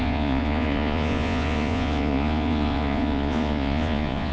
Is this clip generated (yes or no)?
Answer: yes